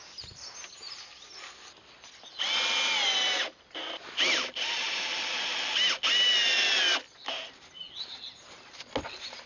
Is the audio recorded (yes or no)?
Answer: yes